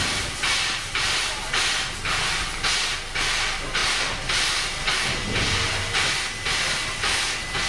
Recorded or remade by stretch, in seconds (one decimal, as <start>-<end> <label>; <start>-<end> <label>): 0.0-7.7 recorded